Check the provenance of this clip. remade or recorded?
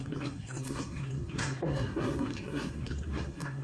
remade